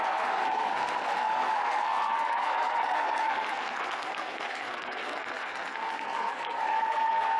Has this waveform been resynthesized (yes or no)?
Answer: yes